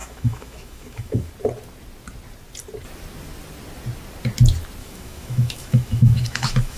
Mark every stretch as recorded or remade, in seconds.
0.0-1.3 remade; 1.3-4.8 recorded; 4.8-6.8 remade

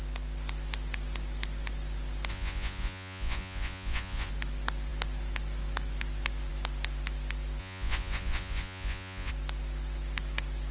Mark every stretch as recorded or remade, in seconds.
0.0-2.3 recorded; 2.3-4.3 remade; 4.3-7.6 recorded; 7.6-9.3 remade; 9.3-10.7 recorded

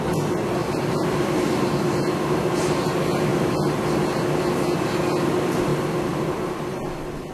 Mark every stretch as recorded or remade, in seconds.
0.0-0.6 recorded; 0.6-1.3 remade; 1.3-5.7 recorded; 5.7-7.3 remade

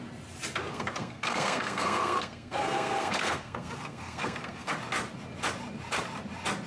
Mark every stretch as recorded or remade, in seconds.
0.0-0.7 recorded; 0.7-4.7 remade; 4.7-6.7 recorded

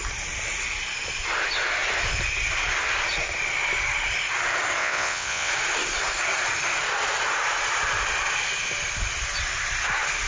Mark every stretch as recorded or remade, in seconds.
0.0-4.8 recorded; 4.8-5.5 remade; 5.5-10.3 recorded